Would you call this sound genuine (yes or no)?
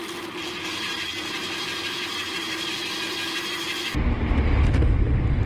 yes